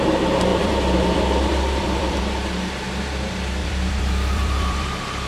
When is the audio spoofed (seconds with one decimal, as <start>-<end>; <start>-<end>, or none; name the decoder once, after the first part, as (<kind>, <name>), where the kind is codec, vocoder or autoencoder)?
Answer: 0.5-2.2 (vocoder, BigVGAN v2); 3.6-5.3